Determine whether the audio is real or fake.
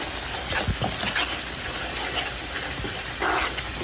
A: real